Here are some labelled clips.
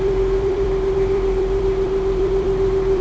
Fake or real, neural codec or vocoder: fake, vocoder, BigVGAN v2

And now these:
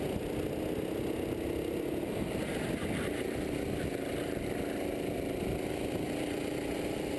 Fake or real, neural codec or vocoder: real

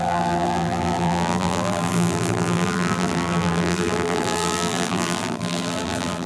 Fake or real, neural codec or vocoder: fake, vocoder, BigVGAN v2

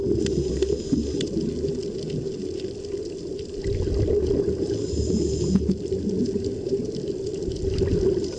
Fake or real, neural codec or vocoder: real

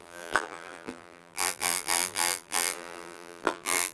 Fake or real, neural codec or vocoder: fake, vocoder, BigVGAN v2